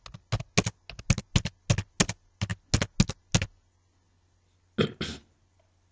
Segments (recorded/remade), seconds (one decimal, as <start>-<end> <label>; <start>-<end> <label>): 0.0-5.9 recorded